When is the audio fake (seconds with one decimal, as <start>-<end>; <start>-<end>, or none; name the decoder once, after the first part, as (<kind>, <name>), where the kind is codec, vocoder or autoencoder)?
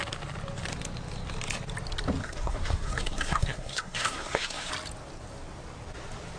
2.2-4.7 (codec, SNAC)